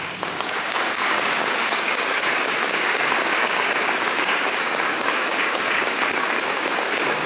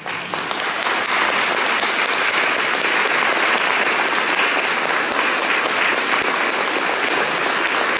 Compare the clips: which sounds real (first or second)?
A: second